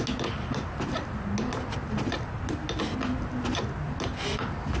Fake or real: real